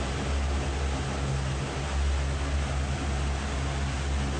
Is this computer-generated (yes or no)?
no